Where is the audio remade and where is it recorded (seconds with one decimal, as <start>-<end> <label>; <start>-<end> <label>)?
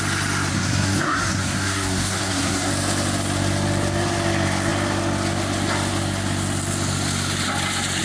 0.0-0.5 recorded; 0.5-2.7 remade; 2.7-8.0 recorded